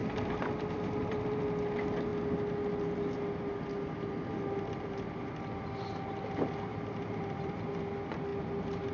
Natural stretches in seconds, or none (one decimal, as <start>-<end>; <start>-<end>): 1.4-6.7; 7.7-8.9